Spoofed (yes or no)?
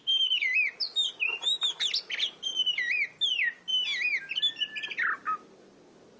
no